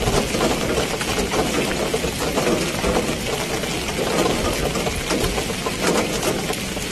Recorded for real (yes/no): yes